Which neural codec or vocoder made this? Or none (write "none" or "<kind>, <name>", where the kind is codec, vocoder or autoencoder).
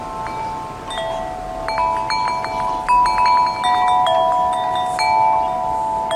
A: none